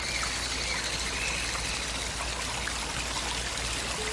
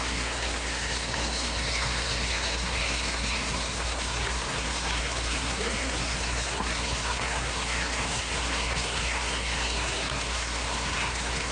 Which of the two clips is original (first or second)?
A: first